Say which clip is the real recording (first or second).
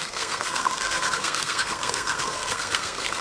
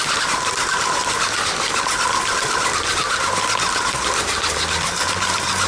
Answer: second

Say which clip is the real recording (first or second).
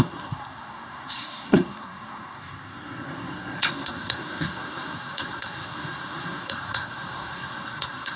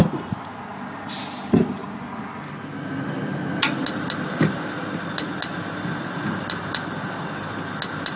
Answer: second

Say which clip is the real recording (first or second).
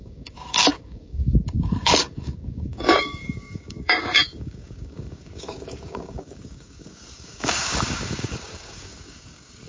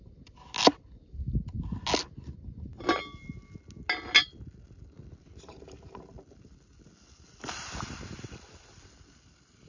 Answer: second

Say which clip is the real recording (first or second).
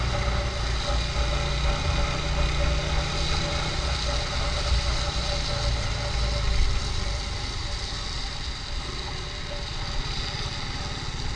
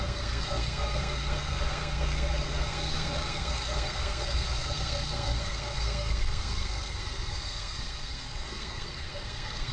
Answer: first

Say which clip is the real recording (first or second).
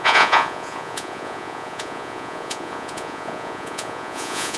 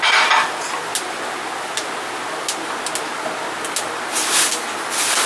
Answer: second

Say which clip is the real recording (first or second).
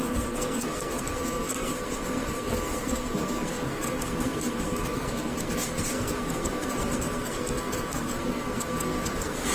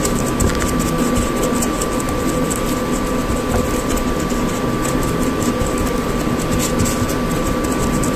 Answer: second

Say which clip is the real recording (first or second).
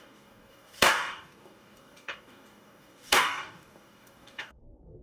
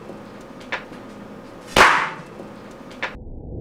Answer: second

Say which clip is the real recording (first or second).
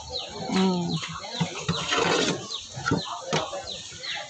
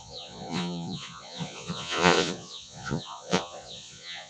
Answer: first